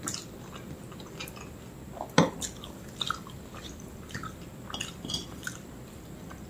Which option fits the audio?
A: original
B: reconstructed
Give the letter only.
A